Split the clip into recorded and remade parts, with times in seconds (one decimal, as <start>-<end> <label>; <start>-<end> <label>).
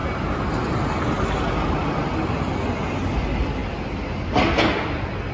0.0-5.3 recorded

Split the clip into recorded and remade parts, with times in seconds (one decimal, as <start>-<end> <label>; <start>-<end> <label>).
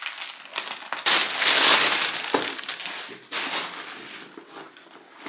0.0-5.3 recorded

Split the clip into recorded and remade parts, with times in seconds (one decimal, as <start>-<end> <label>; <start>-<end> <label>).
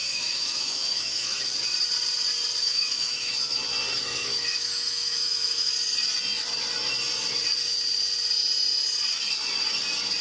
0.0-1.4 remade; 1.4-2.6 recorded; 2.6-3.3 remade; 3.3-4.0 recorded; 4.0-5.7 remade; 5.7-10.2 recorded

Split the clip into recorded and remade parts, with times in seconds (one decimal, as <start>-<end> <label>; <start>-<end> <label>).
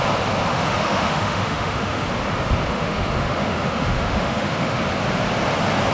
0.0-0.5 recorded; 0.5-2.1 remade; 2.1-2.6 recorded; 2.6-4.8 remade; 4.8-5.9 recorded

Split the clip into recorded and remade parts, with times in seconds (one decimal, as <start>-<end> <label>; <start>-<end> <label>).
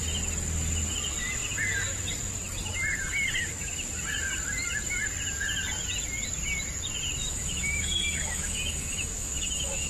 0.0-7.2 recorded; 7.2-9.9 remade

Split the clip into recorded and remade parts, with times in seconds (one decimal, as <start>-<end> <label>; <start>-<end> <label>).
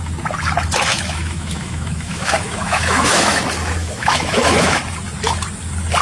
0.0-0.9 recorded; 0.9-3.4 remade; 3.4-3.8 recorded; 3.8-4.8 remade; 4.8-6.0 recorded